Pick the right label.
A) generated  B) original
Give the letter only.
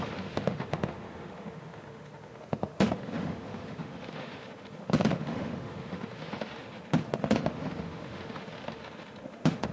A